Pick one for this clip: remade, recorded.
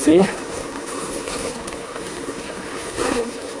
remade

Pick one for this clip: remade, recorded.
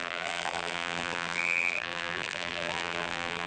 remade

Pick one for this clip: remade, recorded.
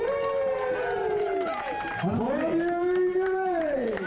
remade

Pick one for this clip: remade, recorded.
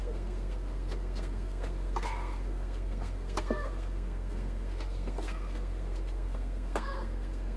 remade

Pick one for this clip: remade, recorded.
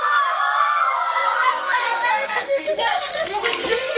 remade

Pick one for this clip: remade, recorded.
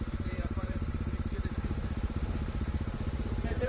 remade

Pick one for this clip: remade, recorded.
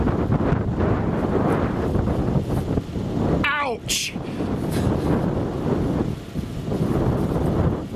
recorded